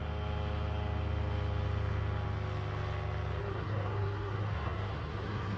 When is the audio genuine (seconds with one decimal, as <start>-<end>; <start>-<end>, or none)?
0.0-3.4